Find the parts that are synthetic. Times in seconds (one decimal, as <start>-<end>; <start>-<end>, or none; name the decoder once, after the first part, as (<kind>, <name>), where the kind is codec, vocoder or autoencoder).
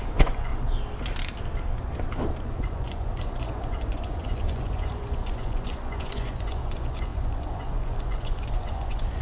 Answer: 0.0-0.5 (vocoder, Vocos); 2.4-9.2